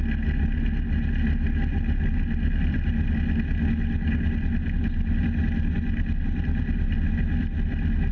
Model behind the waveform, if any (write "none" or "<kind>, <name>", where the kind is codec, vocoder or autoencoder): none